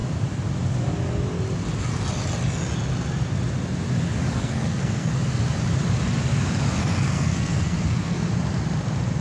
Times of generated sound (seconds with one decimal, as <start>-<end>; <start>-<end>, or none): 4.4-5.2; 6.8-8.3